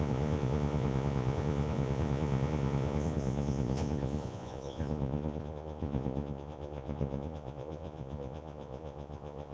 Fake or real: fake